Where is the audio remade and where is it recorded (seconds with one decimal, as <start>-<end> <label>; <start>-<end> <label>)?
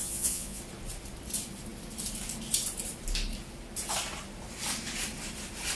0.0-0.6 remade; 0.6-5.7 recorded